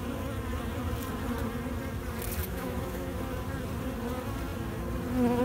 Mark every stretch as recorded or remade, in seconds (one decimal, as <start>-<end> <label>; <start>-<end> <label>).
0.0-2.4 recorded; 2.4-3.2 remade; 3.2-5.4 recorded